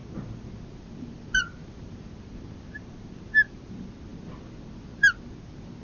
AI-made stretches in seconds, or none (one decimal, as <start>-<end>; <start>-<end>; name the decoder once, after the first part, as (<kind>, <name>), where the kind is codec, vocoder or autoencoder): none